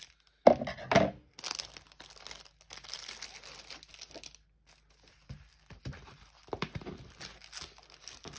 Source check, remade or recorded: recorded